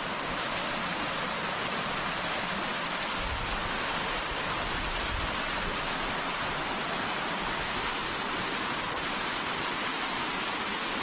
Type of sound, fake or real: real